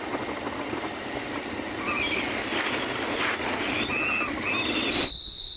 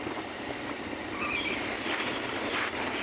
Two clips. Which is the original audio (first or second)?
first